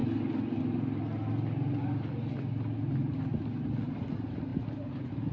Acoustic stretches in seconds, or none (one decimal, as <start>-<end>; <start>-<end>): 0.0-5.3